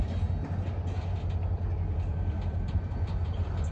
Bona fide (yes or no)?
yes